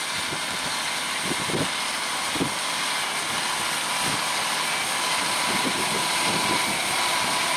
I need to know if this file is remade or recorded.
recorded